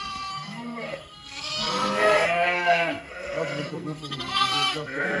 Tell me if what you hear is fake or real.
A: fake